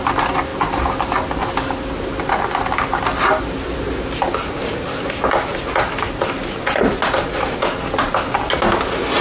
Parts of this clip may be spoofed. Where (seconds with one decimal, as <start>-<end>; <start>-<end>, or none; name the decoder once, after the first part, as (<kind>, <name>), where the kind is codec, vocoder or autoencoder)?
none